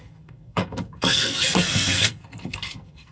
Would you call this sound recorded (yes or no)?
no